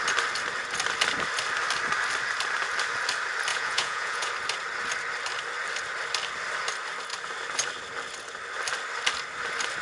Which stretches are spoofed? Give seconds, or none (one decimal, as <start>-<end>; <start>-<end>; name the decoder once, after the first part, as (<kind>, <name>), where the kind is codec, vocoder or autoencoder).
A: 3.5-4.3 (vocoder, Vocos)